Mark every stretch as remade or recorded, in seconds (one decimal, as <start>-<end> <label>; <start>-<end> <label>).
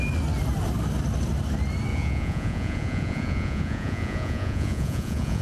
0.0-1.9 recorded; 1.9-5.4 remade